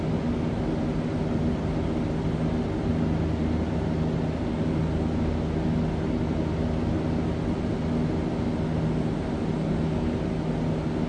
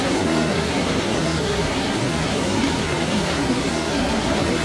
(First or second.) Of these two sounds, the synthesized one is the second